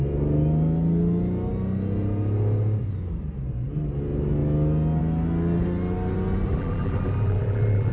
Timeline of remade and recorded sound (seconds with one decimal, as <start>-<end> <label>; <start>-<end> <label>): 0.0-6.5 recorded; 6.5-7.9 remade